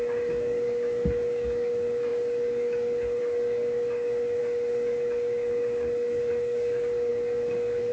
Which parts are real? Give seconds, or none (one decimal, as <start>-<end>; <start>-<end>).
none